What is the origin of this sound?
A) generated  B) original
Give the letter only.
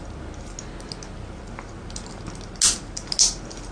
B